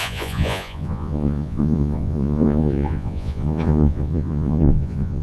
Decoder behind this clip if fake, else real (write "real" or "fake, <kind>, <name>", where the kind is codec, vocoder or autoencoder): fake, vocoder, Vocos